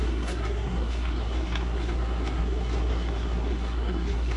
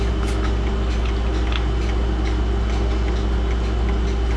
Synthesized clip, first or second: first